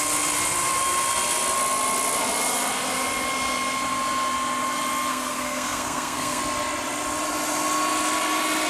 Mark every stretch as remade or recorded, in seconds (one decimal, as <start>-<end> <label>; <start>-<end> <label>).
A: 0.0-5.1 recorded; 5.1-6.4 remade; 6.4-8.7 recorded